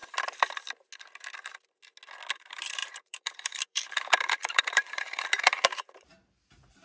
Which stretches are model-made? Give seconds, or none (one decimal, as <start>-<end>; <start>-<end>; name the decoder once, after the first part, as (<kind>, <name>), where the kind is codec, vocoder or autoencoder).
2.3-6.8 (vocoder, BigVGAN v2)